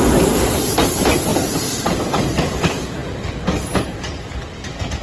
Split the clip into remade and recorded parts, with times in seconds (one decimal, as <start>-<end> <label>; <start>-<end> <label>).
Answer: 0.0-5.0 remade